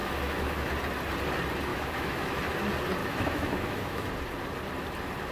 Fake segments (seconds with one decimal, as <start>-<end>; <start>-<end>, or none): 0.0-0.7; 1.7-2.4; 3.0-4.1